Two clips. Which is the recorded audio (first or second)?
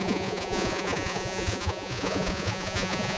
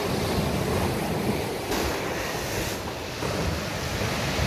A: second